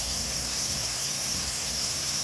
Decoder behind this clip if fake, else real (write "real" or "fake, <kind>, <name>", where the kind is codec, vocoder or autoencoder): fake, codec, SNAC